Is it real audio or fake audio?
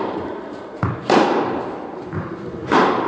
real